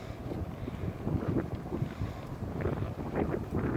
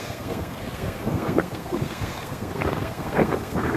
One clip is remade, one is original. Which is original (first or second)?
first